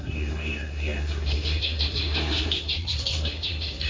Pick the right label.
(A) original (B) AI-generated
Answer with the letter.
B